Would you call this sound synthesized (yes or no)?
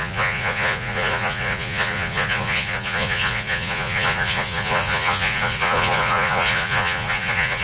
yes